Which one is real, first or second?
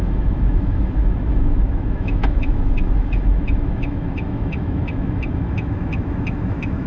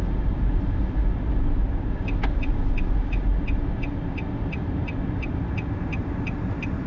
second